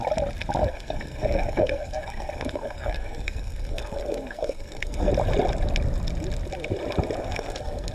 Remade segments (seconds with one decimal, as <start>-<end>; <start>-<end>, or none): 0.6-5.1; 7.2-7.9